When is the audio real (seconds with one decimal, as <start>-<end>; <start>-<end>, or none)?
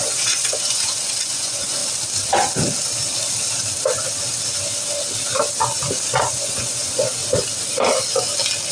1.8-6.2; 7.2-8.7